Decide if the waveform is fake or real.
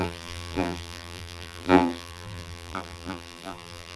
fake